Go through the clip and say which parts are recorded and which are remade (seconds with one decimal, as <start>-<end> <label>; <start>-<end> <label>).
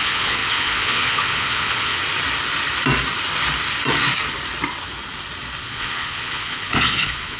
0.0-2.0 remade; 2.0-5.6 recorded; 5.6-7.4 remade